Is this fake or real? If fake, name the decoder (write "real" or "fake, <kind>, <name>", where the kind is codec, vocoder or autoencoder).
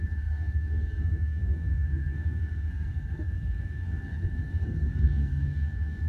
fake, codec, SNAC